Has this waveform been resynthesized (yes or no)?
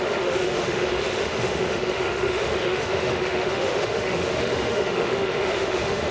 yes